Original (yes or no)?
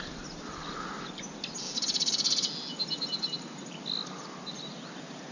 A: yes